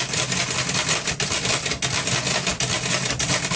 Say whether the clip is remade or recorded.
recorded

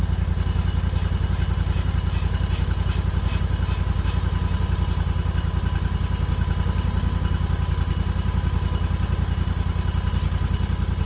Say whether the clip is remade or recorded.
recorded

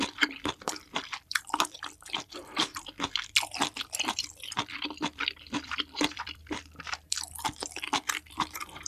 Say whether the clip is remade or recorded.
remade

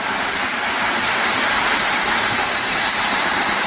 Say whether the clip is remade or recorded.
remade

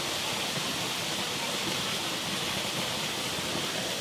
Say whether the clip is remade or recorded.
recorded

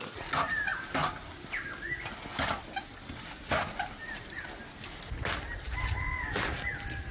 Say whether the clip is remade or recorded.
recorded